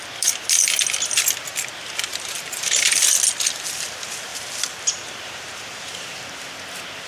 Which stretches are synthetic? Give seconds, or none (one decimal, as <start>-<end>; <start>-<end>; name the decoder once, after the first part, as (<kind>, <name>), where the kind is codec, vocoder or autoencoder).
2.1-3.0 (vocoder, BigVGAN v2); 4.3-5.5